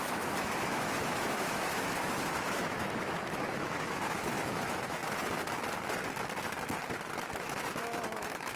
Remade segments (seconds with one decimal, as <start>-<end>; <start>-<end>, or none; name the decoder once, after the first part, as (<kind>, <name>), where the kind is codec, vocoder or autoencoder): 0.0-5.0 (autoencoder, DAC-VAE); 7.2-8.6